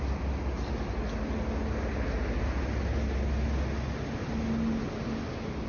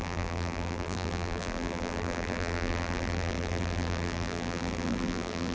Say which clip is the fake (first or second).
second